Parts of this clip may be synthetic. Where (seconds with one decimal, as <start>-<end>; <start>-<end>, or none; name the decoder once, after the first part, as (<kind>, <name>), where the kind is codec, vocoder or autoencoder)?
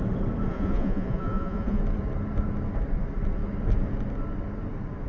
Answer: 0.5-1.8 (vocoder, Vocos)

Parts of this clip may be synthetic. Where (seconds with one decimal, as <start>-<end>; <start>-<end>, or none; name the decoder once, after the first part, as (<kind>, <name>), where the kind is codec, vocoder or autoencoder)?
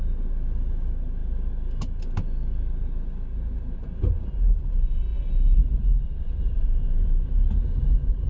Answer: none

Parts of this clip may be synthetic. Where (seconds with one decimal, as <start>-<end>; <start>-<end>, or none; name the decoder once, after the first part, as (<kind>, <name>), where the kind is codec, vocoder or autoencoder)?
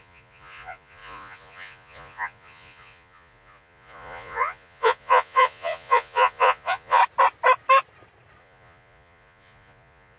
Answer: 0.0-7.0 (vocoder, Vocos); 8.4-10.2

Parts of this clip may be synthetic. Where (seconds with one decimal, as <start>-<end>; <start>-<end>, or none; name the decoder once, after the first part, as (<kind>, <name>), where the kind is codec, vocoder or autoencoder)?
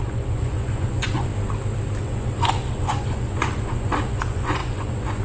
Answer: 0.0-1.3 (vocoder, Vocos); 2.0-5.2